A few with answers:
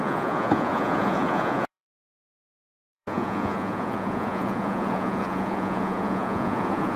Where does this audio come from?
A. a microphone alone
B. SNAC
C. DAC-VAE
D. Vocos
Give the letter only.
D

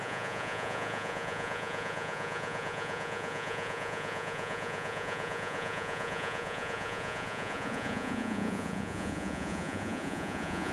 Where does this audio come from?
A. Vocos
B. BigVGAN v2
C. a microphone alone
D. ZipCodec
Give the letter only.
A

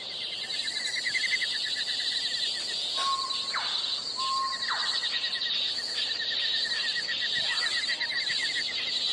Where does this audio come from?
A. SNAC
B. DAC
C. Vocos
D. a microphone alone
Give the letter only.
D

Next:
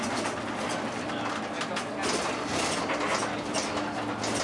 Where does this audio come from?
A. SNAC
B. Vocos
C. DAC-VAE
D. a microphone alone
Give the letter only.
D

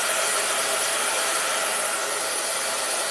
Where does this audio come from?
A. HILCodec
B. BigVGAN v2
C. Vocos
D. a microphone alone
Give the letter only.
D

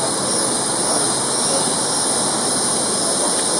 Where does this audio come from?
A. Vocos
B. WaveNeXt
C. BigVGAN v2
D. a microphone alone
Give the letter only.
D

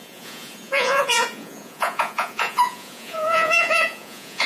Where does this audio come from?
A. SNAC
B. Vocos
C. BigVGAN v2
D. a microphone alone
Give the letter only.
B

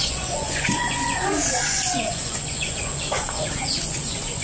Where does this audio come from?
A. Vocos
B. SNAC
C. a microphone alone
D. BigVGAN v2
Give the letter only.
A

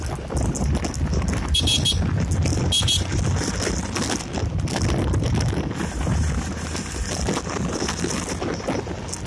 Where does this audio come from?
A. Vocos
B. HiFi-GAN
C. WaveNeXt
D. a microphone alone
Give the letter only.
D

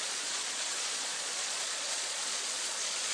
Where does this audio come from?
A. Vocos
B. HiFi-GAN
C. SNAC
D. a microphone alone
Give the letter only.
A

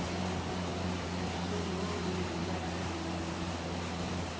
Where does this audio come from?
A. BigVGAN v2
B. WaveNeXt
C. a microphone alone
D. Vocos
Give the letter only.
C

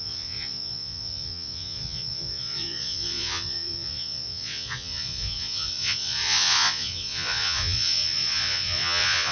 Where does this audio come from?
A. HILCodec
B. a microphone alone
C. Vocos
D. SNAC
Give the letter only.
C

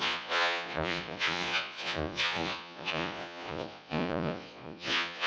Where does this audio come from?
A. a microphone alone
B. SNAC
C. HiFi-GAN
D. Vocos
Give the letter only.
D